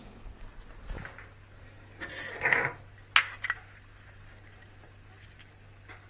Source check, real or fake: real